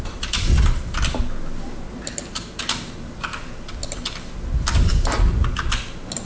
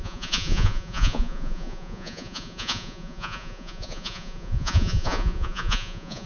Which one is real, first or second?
first